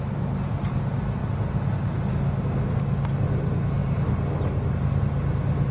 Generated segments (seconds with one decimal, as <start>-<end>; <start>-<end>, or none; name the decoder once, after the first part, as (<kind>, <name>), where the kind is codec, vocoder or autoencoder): none